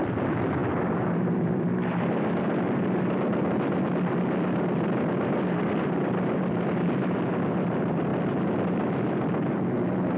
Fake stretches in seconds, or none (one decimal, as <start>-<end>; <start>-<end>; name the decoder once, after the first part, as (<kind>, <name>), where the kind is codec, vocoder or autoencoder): 0.0-8.1 (vocoder, BigVGAN v2); 8.6-10.2